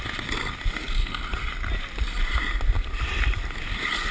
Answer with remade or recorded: recorded